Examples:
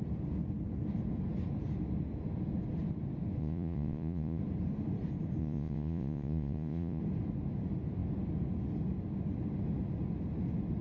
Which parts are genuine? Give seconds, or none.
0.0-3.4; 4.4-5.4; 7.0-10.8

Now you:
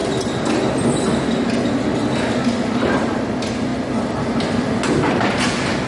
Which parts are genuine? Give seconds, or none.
0.0-5.9

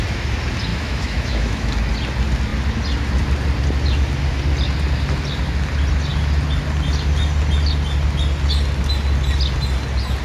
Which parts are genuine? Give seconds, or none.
0.0-0.7; 1.7-10.2

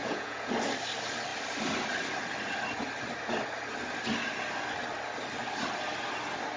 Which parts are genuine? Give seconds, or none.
0.5-6.6

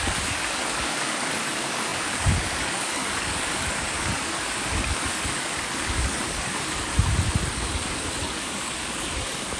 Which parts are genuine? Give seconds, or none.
6.9-7.5

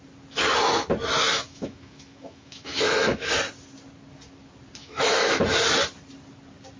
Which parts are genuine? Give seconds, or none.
0.0-1.2; 3.3-4.8; 5.4-6.8

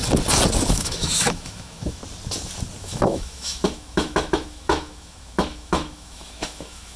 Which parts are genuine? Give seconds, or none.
0.0-0.7; 2.0-2.8